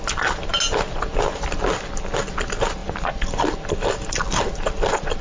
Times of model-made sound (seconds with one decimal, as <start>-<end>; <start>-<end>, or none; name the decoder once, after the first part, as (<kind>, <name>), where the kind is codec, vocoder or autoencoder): none